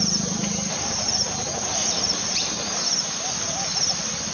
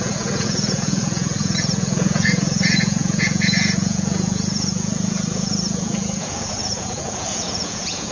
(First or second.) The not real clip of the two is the second